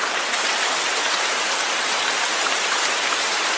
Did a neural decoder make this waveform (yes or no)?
yes